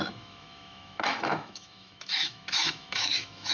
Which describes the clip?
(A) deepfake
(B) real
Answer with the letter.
A